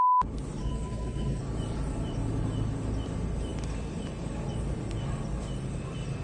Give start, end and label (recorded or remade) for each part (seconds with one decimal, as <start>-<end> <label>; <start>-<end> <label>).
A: 0.0-0.6 recorded; 0.6-1.4 remade; 1.4-6.2 recorded